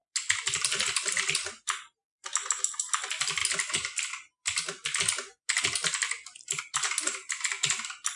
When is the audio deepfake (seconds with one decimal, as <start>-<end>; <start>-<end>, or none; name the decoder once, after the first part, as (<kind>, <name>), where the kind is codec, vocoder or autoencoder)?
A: none